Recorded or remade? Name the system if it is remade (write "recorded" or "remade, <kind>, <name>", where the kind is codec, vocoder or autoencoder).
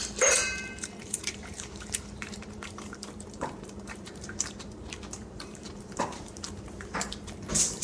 remade, vocoder, BigVGAN v2